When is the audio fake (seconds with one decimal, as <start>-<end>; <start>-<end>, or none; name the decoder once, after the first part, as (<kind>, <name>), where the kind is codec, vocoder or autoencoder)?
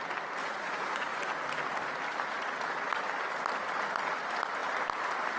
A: 0.4-1.2 (vocoder, Vocos)